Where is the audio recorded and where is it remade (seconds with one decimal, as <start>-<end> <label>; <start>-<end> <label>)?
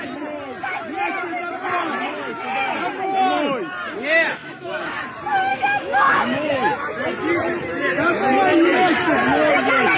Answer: 0.0-4.4 recorded; 4.4-4.9 remade; 4.9-5.5 recorded; 5.5-6.5 remade; 6.5-10.0 recorded